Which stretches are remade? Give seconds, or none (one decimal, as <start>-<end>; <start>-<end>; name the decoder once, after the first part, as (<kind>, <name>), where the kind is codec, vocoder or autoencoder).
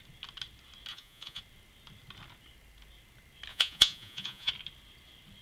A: 0.9-1.4 (vocoder, Vocos); 3.5-4.5